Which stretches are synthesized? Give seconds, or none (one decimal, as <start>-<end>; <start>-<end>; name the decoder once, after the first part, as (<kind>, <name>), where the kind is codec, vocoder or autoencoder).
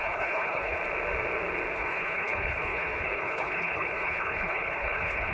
0.0-0.8 (codec, HILCodec); 1.7-5.3